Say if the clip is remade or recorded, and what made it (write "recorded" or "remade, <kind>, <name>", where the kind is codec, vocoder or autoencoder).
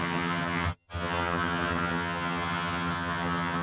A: remade, vocoder, HiFi-GAN